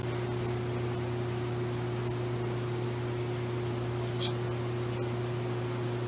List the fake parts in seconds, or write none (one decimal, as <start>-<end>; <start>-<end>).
none

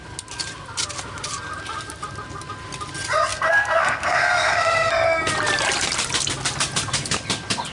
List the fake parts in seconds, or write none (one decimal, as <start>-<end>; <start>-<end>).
3.3-4.9

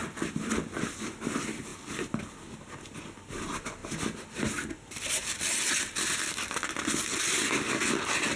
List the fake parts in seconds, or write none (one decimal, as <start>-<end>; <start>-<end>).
none

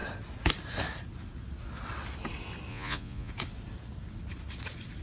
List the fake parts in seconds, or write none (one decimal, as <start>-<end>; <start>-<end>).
2.7-3.3

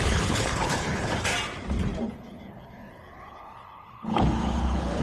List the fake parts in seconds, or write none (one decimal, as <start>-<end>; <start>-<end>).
0.0-1.3; 2.1-5.0